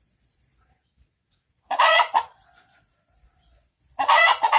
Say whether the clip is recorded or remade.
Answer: remade